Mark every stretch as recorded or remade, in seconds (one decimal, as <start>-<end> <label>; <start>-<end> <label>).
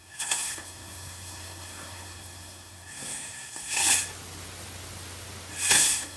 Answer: 0.0-3.8 remade; 3.8-5.7 recorded; 5.7-6.2 remade